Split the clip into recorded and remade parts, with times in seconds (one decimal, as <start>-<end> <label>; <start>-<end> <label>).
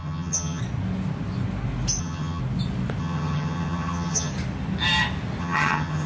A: 0.0-0.6 remade; 0.6-2.0 recorded; 2.0-2.4 remade; 2.4-3.0 recorded; 3.0-4.3 remade; 4.3-5.4 recorded; 5.4-6.1 remade